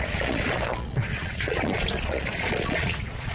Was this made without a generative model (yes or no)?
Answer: no